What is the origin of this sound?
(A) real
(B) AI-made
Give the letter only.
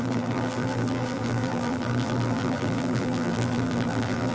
B